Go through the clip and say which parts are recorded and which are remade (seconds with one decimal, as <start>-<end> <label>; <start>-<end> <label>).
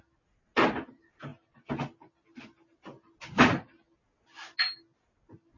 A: 0.0-5.6 recorded